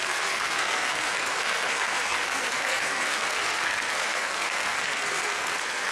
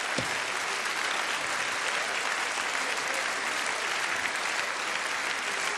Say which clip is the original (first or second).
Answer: second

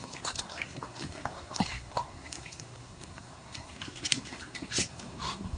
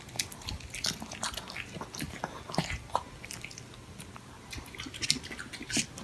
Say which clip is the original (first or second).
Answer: second